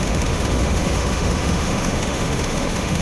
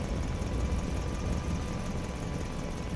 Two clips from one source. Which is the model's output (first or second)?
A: first